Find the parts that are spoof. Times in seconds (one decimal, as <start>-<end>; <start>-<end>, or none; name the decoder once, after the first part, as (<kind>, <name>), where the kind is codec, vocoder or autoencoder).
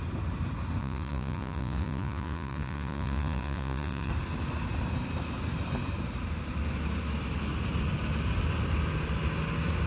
0.8-4.1 (vocoder, Vocos)